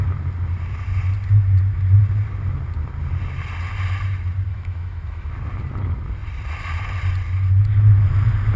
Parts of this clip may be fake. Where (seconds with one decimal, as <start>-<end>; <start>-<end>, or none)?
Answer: 4.5-5.3